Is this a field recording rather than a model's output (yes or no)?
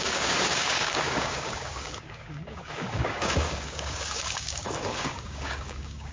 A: no